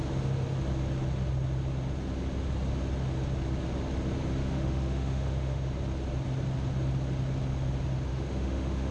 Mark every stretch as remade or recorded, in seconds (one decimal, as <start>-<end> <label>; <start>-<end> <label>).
0.0-4.4 recorded; 4.4-5.7 remade; 5.7-8.1 recorded; 8.1-8.9 remade